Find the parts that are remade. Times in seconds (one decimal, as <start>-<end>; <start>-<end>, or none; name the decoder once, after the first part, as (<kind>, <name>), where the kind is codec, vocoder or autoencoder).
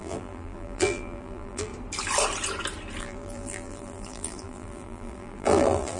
0.0-1.7 (vocoder, BigVGAN v2); 3.0-6.0